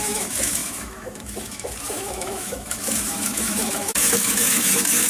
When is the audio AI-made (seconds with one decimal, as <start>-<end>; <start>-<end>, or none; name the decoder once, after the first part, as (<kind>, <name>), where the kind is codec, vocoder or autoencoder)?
0.0-5.1 (autoencoder, DAC-VAE)